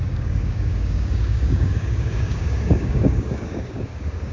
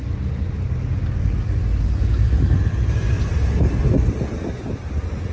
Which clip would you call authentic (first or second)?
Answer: second